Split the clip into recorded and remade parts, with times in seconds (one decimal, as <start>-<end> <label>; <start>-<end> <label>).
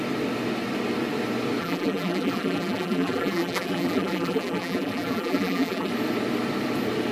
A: 0.0-1.6 recorded; 1.6-5.9 remade; 5.9-7.1 recorded